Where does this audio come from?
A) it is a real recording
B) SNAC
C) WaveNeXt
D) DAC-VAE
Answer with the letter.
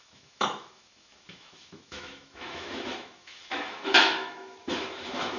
D